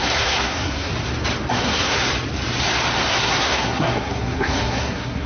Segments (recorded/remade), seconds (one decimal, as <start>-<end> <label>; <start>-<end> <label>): 0.0-0.9 remade; 0.9-1.5 recorded; 1.5-2.1 remade; 2.1-3.1 recorded; 3.1-5.3 remade